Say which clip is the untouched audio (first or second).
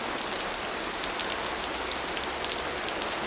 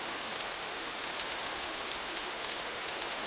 first